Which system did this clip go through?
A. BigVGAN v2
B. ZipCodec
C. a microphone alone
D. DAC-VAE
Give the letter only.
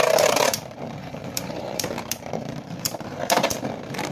A